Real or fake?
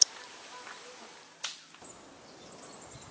real